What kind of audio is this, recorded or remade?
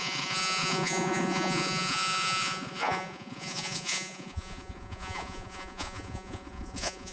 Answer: remade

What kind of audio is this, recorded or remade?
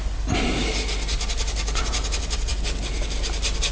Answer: recorded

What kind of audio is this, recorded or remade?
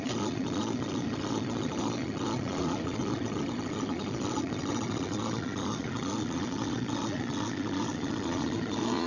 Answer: remade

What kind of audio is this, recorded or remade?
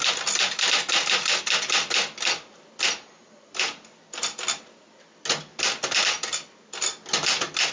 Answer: recorded